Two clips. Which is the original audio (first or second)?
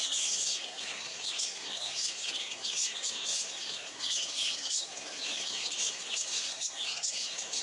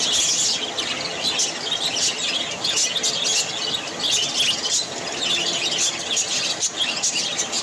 second